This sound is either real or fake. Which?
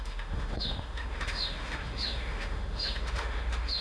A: fake